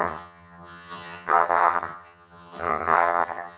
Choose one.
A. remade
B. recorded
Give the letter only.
A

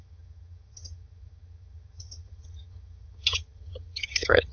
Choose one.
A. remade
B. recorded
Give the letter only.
A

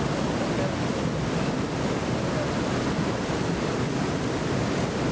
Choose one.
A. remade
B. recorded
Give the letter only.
B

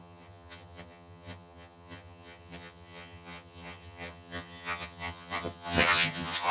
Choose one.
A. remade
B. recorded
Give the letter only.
A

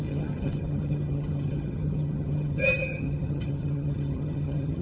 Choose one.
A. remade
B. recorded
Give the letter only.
A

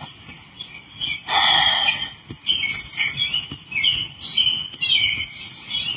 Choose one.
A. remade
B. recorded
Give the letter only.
B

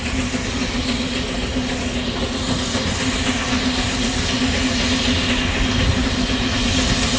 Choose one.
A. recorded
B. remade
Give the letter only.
A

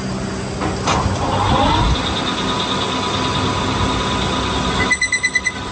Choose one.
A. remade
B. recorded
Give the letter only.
B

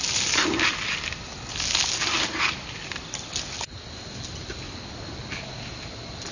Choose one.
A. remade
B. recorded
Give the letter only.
B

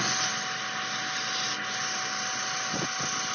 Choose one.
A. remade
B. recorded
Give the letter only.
B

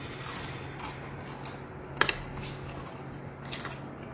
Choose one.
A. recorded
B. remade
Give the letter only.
A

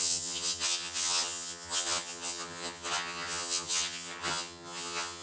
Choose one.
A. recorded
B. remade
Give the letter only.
B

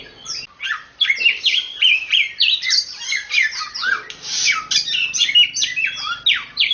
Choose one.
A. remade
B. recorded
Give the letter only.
B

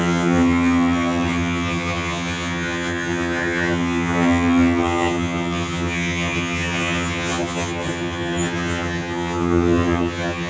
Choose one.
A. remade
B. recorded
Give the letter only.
A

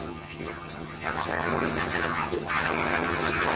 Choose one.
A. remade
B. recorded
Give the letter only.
A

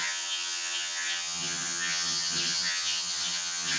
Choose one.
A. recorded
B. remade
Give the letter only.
B